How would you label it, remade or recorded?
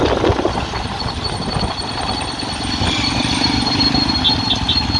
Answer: recorded